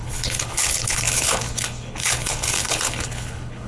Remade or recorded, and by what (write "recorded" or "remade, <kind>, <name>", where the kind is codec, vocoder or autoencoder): remade, codec, HILCodec